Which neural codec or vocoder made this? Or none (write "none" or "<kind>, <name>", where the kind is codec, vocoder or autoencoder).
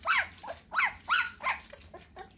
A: none